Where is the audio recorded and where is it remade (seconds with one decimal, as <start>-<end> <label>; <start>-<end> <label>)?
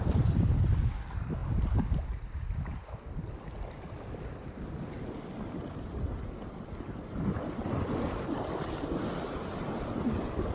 0.0-10.5 recorded